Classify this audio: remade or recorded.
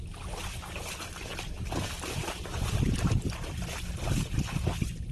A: recorded